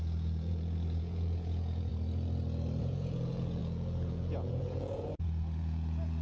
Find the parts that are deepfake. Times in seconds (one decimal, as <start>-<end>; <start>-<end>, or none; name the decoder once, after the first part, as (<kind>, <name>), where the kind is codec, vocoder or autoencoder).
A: 0.0-1.9 (vocoder, Vocos); 2.8-6.2